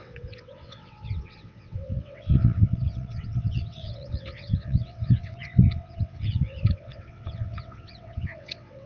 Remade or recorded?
remade